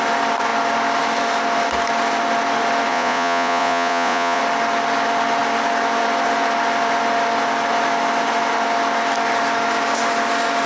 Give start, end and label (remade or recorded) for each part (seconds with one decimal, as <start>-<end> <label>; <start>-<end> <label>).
0.0-2.9 recorded; 2.9-4.4 remade; 4.4-10.7 recorded